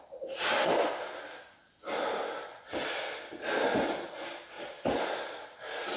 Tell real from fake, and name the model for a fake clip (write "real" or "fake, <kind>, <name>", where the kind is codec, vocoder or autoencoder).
real